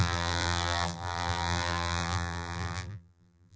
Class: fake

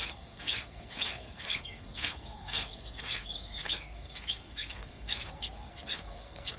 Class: fake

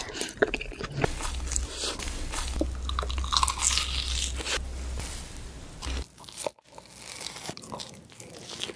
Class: real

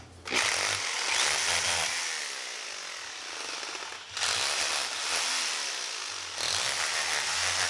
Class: real